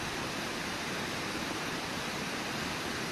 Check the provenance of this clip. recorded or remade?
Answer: remade